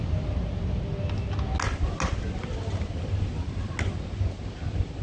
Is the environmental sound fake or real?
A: real